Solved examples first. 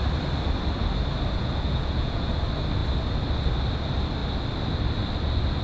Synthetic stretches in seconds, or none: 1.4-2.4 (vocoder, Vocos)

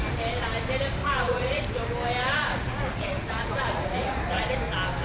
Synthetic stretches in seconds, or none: 1.0-1.6 (vocoder, Vocos); 2.3-4.4

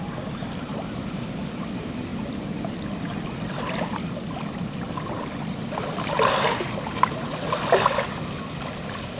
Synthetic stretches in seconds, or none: none

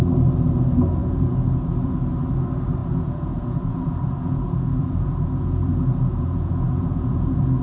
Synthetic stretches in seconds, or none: 1.0-2.0 (vocoder, Vocos); 2.8-7.6

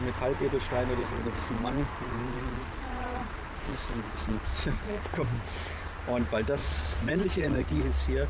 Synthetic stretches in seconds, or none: 1.0-5.0 (vocoder, Vocos); 6.6-7.8

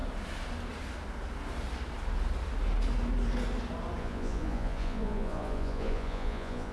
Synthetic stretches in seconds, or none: 4.0-6.7 (vocoder, Vocos)

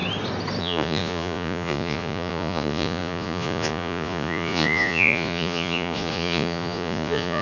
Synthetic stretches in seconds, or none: 0.6-7.4 (vocoder, Vocos)

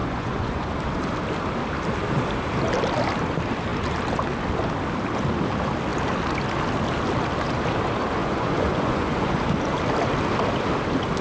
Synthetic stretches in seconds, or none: 0.0-0.7 (vocoder, Vocos); 8.2-9.4